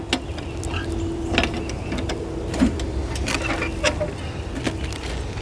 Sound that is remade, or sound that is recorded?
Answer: recorded